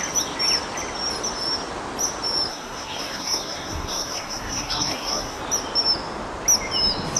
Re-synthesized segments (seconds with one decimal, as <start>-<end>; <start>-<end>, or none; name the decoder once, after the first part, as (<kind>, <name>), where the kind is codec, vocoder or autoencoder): 2.5-5.4 (codec, SNAC)